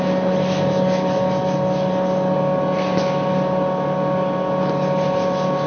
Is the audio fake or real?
real